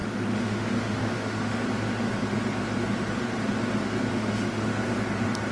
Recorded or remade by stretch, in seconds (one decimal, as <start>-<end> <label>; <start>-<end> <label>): 0.0-1.6 remade; 1.6-4.1 recorded; 4.1-4.7 remade; 4.7-5.5 recorded